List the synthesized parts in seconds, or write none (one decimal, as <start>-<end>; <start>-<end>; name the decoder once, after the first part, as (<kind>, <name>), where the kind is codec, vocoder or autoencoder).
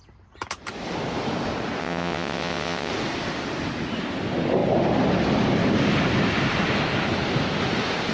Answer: 1.8-2.9 (vocoder, WaveNeXt)